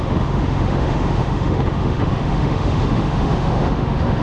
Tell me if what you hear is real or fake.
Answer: fake